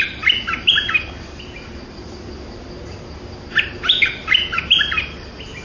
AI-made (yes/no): no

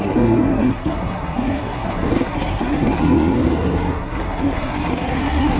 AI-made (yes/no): yes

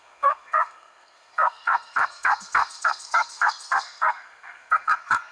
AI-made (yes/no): yes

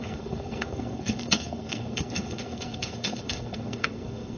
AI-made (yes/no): yes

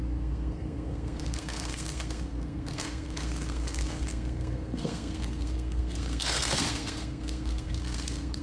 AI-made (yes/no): yes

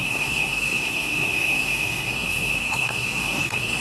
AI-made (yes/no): yes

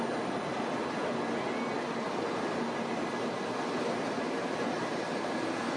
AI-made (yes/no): no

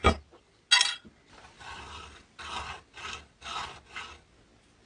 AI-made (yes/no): no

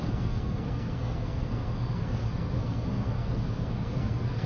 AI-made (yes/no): yes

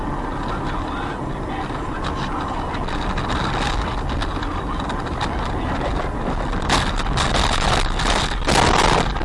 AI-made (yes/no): no